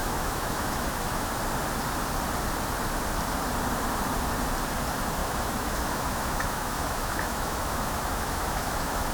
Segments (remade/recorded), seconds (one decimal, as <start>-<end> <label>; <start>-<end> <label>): 0.0-1.3 remade; 1.3-5.2 recorded; 5.2-9.1 remade